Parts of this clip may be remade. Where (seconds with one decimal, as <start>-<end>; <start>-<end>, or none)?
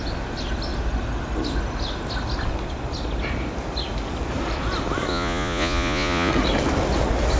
5.1-6.3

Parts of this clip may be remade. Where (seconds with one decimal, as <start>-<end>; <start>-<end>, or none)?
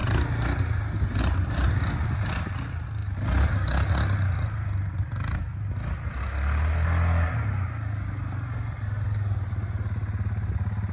none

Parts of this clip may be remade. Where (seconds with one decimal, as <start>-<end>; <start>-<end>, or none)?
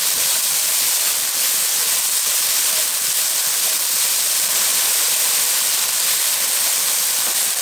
none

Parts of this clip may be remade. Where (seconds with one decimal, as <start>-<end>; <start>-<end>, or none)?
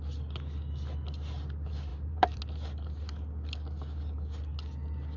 1.9-2.4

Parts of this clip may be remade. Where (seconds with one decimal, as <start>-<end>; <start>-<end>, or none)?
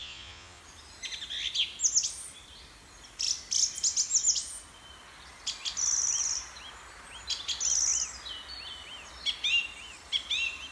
0.0-0.6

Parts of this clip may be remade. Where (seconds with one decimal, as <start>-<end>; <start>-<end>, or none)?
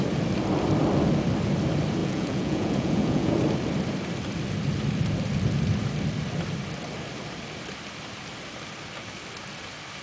2.0-3.3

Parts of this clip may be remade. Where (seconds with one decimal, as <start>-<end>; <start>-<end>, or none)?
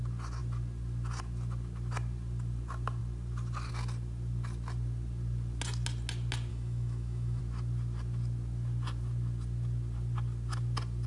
6.5-7.4